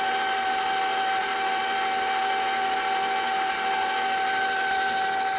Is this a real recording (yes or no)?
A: yes